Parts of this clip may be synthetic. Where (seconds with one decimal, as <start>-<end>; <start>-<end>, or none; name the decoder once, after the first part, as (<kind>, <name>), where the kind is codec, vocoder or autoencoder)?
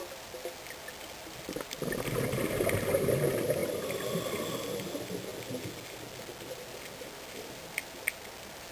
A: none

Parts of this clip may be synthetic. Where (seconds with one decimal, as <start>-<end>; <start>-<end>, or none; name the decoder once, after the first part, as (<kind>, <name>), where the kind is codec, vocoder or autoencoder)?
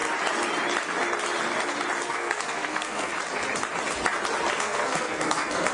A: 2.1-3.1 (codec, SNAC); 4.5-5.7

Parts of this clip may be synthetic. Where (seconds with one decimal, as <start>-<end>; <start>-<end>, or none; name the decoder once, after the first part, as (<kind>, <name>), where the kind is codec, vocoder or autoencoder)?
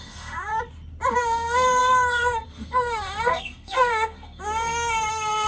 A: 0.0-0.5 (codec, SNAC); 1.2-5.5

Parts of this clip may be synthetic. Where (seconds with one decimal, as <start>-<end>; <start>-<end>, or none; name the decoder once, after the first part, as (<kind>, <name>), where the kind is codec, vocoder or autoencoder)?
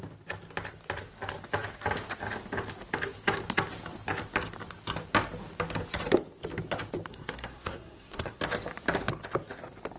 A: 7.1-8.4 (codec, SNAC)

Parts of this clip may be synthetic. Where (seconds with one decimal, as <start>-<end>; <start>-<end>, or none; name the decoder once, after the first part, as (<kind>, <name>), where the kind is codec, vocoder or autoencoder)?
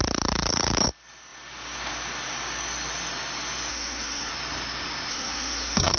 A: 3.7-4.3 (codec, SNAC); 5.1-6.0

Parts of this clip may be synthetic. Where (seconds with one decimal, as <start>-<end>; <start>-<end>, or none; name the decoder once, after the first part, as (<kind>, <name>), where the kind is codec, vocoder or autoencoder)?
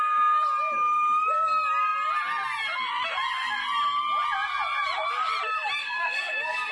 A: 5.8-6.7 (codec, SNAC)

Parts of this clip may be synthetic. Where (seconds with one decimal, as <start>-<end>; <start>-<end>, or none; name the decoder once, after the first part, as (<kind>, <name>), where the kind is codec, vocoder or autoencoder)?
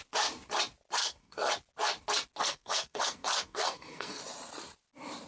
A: 1.0-1.5 (codec, SNAC); 2.4-4.2